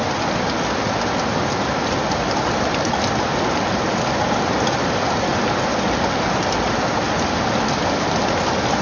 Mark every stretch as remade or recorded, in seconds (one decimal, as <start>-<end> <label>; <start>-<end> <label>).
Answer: 0.0-8.8 recorded